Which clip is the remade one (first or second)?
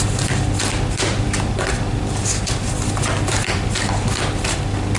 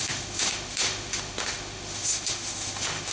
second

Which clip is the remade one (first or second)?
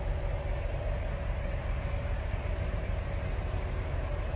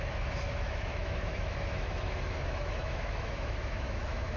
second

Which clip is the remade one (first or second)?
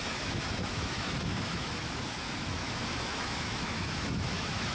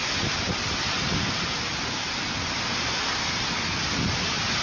first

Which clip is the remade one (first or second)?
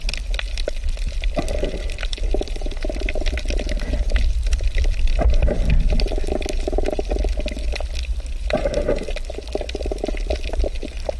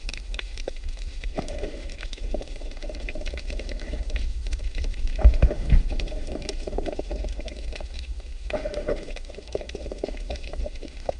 second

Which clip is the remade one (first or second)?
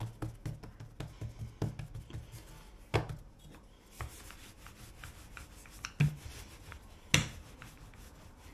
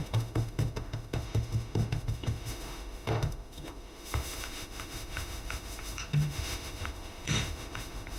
second